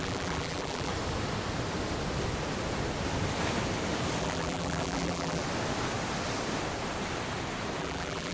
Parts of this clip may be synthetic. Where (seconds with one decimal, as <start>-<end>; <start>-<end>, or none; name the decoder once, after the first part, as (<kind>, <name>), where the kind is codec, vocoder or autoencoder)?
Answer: 0.0-0.9 (vocoder, BigVGAN v2); 4.2-5.4; 7.8-8.3